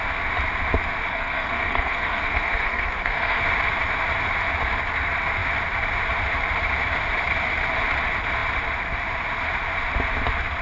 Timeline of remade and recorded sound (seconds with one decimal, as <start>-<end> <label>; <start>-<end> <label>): 0.0-1.1 recorded; 1.1-3.4 remade; 3.4-10.6 recorded